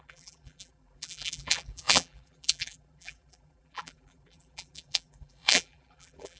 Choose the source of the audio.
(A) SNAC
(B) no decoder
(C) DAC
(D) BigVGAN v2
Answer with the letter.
D